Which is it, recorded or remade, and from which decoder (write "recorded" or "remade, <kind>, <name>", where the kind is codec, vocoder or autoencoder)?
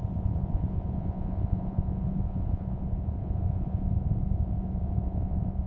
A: remade, vocoder, Vocos